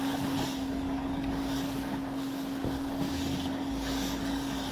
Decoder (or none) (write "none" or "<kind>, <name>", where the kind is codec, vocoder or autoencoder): codec, DAC